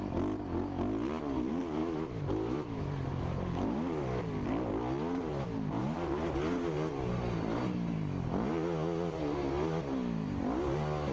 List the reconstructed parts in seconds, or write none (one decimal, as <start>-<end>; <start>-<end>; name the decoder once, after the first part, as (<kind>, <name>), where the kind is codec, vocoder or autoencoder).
1.8-4.2 (autoencoder, DAC-VAE)